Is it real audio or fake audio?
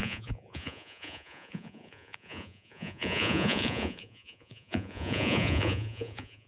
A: fake